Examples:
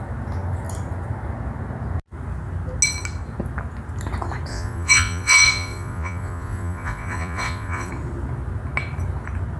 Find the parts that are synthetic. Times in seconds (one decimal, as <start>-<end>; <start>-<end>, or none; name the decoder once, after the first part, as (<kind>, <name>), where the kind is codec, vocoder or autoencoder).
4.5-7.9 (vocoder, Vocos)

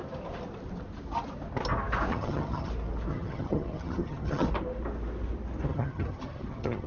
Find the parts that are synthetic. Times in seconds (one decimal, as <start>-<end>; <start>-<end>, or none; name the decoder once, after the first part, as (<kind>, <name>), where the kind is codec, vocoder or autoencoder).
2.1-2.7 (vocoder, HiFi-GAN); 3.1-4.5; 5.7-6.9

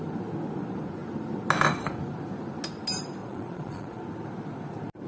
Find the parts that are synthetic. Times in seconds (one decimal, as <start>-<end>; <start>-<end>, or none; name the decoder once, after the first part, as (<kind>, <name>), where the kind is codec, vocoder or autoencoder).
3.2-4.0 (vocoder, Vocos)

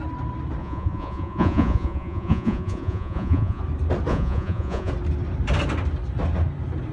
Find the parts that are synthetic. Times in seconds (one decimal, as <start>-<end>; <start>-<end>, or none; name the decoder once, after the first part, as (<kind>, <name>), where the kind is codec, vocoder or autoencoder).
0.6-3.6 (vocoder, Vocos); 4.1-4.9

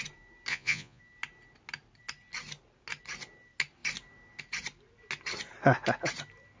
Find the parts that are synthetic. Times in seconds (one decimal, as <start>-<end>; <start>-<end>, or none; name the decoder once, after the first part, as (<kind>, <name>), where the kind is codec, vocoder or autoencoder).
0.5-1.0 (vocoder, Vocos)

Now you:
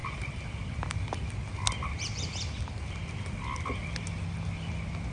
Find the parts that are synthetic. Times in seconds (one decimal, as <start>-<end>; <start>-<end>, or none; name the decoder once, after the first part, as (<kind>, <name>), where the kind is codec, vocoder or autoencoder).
0.0-3.1 (vocoder, BigVGAN v2)

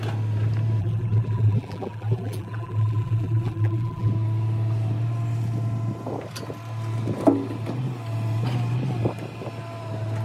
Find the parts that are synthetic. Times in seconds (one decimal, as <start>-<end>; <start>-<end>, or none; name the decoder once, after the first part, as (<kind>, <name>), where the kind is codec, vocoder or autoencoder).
0.8-4.1 (vocoder, BigVGAN v2)

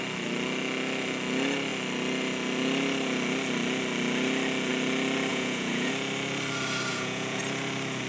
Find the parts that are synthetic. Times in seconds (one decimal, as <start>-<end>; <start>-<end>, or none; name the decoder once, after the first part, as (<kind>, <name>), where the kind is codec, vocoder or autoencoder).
5.3-5.9 (vocoder, Vocos); 6.9-7.4